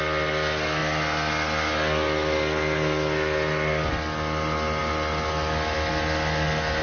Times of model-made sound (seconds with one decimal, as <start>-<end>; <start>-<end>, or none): none

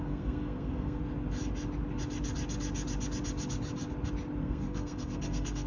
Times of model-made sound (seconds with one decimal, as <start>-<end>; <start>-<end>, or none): 0.0-1.0; 4.4-5.7